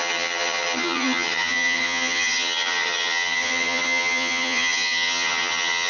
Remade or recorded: remade